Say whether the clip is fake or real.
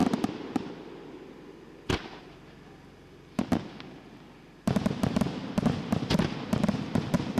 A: real